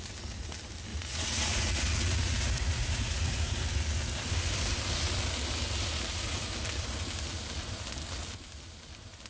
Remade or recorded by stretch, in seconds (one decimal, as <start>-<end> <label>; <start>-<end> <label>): 0.0-0.9 recorded; 0.9-3.7 remade; 3.7-9.3 recorded